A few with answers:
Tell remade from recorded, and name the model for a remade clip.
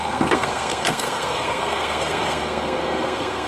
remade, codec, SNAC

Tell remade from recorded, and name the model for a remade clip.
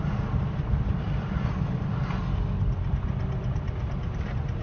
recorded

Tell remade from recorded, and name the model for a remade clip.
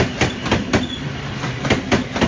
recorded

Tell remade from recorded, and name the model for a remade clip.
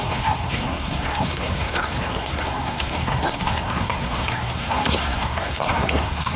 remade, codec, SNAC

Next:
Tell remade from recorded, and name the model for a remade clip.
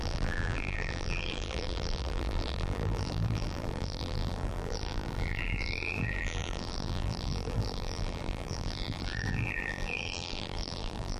remade, vocoder, BigVGAN v2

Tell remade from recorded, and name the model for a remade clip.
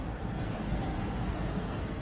remade, codec, SNAC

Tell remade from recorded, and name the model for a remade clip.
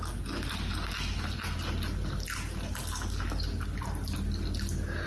recorded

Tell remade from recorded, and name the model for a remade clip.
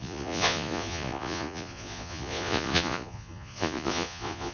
remade, vocoder, Vocos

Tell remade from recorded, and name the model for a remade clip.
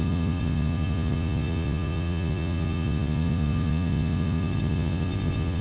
remade, vocoder, Vocos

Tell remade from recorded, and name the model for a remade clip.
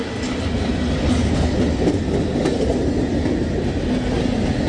recorded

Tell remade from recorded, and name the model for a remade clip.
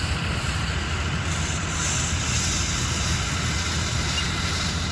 recorded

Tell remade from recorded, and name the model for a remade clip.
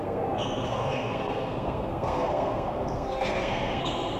remade, codec, SNAC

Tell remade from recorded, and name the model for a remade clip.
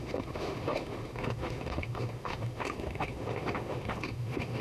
remade, autoencoder, DAC-VAE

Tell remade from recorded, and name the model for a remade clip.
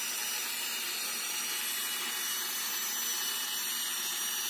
remade, vocoder, BigVGAN v2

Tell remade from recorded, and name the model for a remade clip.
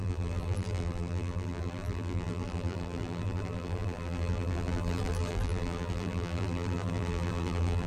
remade, vocoder, BigVGAN v2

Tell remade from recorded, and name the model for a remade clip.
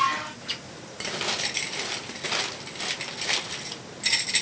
recorded